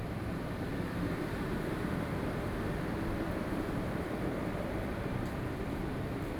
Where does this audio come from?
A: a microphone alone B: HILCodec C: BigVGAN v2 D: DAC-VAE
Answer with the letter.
C